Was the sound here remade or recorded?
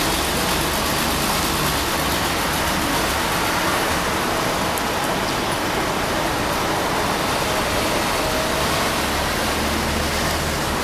recorded